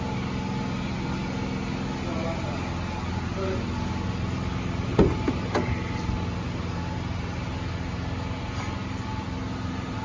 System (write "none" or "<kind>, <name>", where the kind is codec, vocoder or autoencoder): none